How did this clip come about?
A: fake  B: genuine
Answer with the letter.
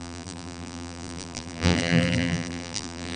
A